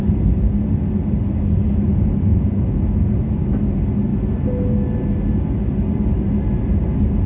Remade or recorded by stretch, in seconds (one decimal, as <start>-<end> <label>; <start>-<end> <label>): 0.0-2.3 recorded; 2.3-2.8 remade; 2.8-7.3 recorded